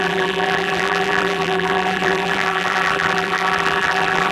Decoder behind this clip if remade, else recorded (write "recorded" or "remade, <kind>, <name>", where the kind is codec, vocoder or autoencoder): remade, vocoder, BigVGAN v2